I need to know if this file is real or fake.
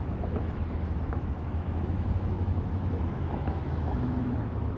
fake